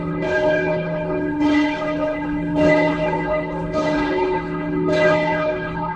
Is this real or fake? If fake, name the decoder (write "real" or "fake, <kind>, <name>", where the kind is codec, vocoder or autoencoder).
fake, codec, HILCodec